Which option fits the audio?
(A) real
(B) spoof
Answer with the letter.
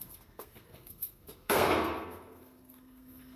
B